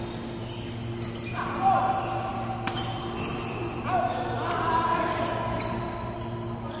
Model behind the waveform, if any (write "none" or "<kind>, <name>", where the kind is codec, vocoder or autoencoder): none